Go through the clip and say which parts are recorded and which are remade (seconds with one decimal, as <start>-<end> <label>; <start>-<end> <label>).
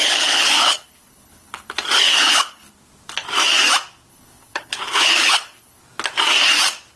0.0-2.7 remade; 2.7-4.1 recorded; 4.1-5.8 remade; 5.8-7.0 recorded